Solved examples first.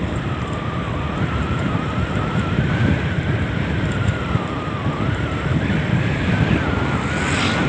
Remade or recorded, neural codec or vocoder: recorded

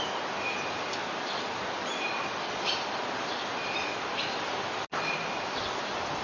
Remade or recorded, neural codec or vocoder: recorded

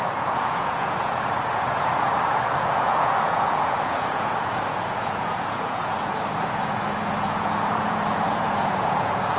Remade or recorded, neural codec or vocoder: remade, vocoder, Vocos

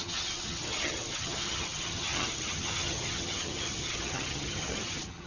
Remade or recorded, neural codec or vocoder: remade, vocoder, HiFi-GAN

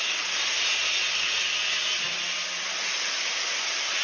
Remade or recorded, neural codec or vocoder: recorded